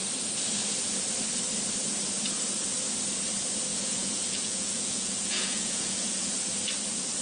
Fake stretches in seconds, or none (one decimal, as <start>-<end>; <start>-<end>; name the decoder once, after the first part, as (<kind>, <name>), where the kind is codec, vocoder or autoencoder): 3.7-6.3 (vocoder, Vocos)